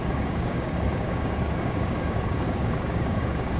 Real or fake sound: fake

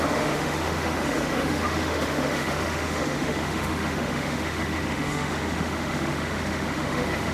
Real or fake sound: fake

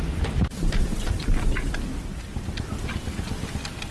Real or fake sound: real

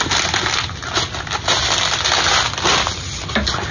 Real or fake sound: real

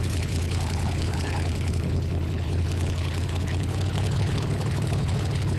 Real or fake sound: fake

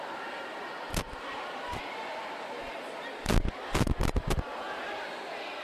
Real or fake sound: real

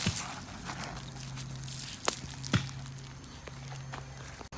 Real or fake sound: real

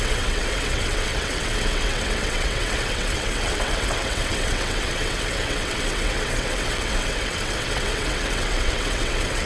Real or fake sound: fake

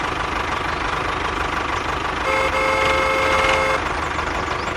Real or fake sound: real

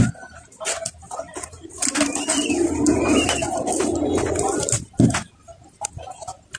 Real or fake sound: real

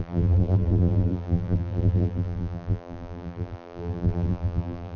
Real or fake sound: fake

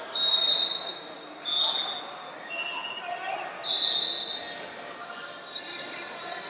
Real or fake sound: real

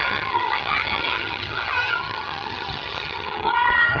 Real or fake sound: fake